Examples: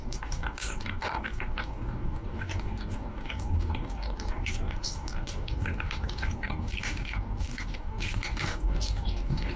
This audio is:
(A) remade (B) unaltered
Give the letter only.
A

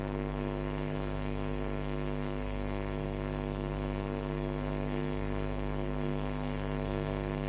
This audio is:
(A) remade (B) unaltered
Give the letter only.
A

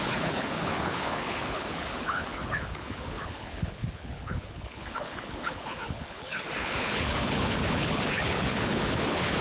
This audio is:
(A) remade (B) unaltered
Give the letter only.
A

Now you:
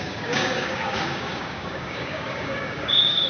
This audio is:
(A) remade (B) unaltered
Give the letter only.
A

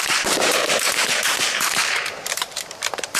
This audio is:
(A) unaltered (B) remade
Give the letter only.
B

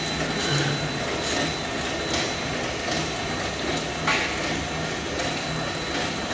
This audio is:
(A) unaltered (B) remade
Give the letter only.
A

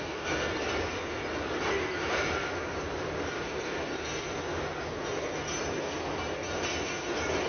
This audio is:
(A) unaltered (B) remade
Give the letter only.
A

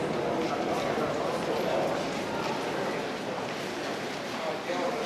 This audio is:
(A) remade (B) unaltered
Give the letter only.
B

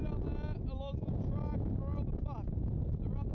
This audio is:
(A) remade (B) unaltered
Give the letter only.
B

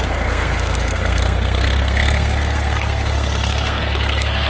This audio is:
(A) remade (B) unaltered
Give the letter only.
A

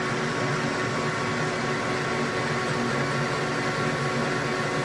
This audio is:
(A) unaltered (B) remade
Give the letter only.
A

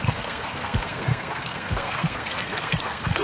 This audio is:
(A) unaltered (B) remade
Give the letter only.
B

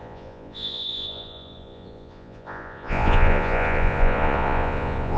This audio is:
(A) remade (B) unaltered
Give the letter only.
A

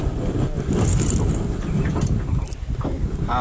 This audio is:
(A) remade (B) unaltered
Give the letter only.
B